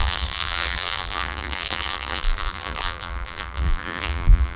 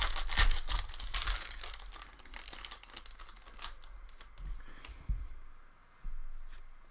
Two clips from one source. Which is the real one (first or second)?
second